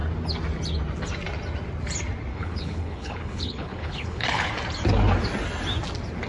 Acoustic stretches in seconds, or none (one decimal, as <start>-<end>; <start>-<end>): 0.0-2.3; 4.5-6.3